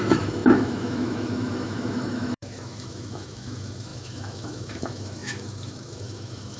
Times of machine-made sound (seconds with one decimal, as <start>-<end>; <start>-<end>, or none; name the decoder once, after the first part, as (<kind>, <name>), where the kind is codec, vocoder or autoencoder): 0.0-6.6 (autoencoder, DAC-VAE)